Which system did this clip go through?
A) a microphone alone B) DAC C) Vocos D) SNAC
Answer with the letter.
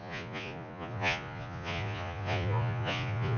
C